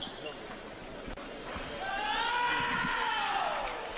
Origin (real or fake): real